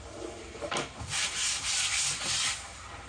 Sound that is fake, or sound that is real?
real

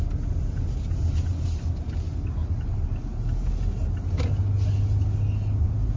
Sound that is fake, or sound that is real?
real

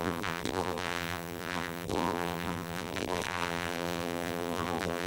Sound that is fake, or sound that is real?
fake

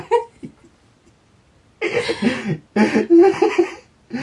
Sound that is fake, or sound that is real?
real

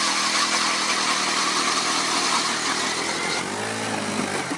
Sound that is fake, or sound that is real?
real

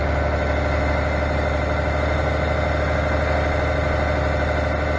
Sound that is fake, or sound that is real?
real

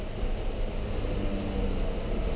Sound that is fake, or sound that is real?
real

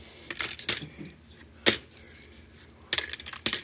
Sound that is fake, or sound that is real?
real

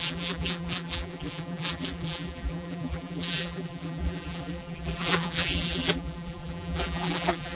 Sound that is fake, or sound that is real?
fake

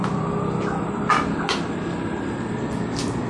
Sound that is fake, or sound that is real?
real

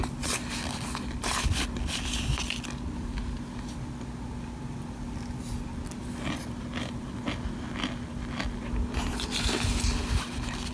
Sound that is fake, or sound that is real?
real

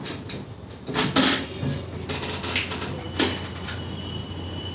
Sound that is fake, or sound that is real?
real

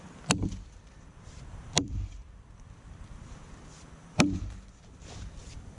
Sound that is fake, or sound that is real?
fake